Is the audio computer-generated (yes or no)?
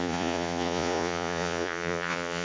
yes